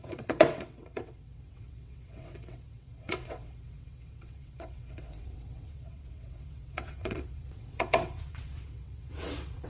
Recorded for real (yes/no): no